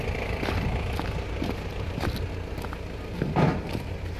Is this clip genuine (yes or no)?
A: yes